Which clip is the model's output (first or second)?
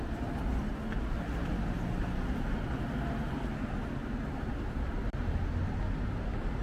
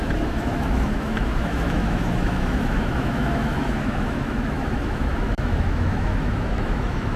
second